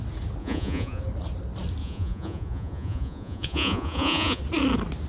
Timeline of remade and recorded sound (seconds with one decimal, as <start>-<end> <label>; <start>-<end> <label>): 0.0-0.4 recorded; 0.4-1.0 remade; 1.0-1.8 recorded; 1.8-4.4 remade; 4.4-5.1 recorded